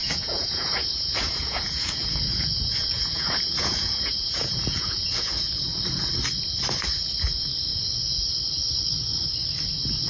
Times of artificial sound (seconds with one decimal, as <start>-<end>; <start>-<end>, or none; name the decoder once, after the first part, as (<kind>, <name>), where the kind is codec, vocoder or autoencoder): 0.0-5.3 (vocoder, Vocos); 7.7-8.3